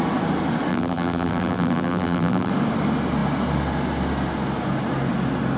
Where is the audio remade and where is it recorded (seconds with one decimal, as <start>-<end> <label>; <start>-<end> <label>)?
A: 0.0-0.7 recorded; 0.7-2.5 remade; 2.5-5.6 recorded